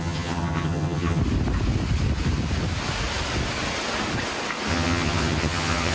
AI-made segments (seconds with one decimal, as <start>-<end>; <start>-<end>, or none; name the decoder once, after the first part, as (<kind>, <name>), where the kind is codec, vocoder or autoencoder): 0.0-1.2 (vocoder, HiFi-GAN); 4.7-5.9